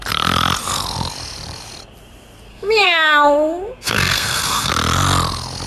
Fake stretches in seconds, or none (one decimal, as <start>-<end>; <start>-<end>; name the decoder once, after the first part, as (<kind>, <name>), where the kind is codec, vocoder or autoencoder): 2.5-4.7 (codec, SNAC)